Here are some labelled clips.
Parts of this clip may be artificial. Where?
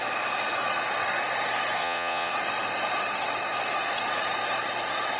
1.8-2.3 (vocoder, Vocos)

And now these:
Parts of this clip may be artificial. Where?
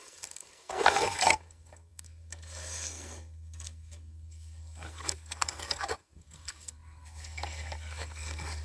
0.0-8.6 (codec, SNAC)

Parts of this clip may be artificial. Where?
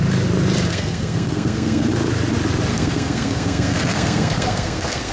0.7-1.9 (codec, SNAC); 2.7-5.1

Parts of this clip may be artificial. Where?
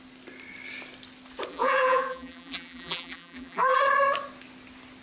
1.5-3.8 (vocoder, BigVGAN v2)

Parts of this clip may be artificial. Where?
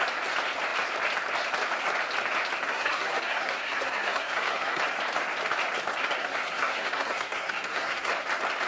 2.7-4.8 (codec, SNAC); 6.2-8.1